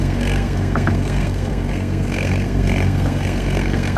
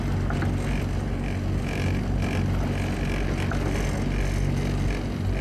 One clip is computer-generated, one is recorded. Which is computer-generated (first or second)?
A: first